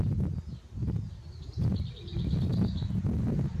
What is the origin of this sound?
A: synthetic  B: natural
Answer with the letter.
B